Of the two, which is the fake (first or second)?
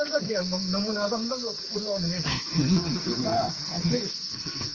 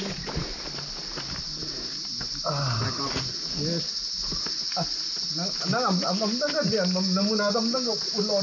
first